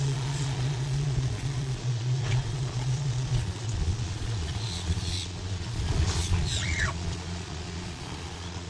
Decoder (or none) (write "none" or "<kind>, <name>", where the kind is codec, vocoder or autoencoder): vocoder, Vocos